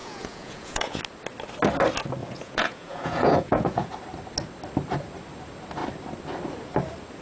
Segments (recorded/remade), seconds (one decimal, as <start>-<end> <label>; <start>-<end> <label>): 0.0-1.0 remade; 1.0-2.2 recorded; 2.2-3.9 remade; 3.9-7.2 recorded

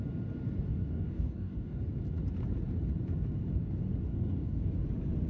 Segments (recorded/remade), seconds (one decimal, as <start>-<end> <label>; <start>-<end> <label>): 0.0-0.7 recorded; 0.7-1.8 remade; 1.8-4.1 recorded; 4.1-4.7 remade; 4.7-5.3 recorded

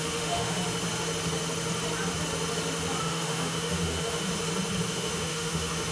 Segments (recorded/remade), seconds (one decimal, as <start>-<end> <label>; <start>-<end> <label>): 0.0-0.6 remade; 0.6-3.0 recorded; 3.0-4.3 remade; 4.3-4.9 recorded; 4.9-5.9 remade

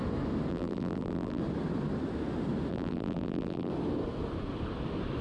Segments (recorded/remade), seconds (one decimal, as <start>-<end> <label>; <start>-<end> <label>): 0.0-0.5 recorded; 0.5-1.4 remade; 1.4-2.7 recorded; 2.7-3.7 remade; 3.7-5.2 recorded